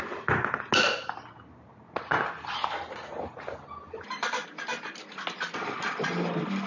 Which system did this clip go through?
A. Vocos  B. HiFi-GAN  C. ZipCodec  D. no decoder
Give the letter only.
D